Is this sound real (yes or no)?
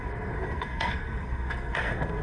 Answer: no